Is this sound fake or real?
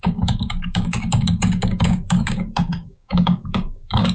fake